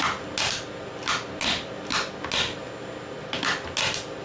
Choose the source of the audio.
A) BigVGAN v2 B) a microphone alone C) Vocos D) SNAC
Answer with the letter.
B